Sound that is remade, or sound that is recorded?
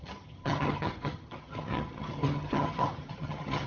remade